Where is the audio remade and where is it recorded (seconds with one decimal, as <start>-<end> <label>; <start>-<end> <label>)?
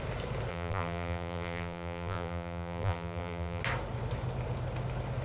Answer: 0.0-0.5 recorded; 0.5-3.6 remade; 3.6-5.2 recorded